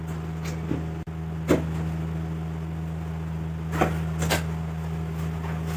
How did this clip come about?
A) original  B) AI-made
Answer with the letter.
A